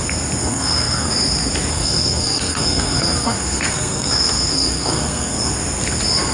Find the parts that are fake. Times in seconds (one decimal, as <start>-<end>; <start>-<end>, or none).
0.4-1.1; 1.7-5.5